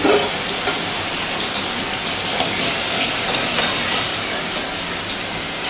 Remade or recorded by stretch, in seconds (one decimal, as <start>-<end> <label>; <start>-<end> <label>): 0.0-2.3 recorded; 2.3-3.1 remade; 3.1-4.1 recorded; 4.1-5.0 remade; 5.0-5.7 recorded